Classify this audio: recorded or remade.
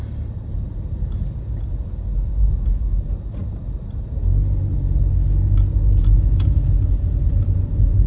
recorded